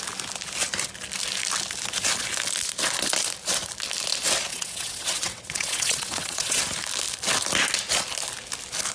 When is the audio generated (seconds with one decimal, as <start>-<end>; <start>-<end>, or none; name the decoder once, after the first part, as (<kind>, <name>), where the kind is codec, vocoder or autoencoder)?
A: 4.5-6.6 (vocoder, WaveNeXt)